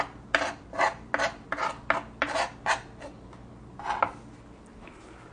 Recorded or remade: recorded